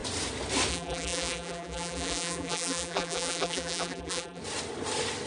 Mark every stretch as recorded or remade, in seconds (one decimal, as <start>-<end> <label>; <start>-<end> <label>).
0.0-0.7 recorded; 0.7-4.4 remade; 4.4-5.3 recorded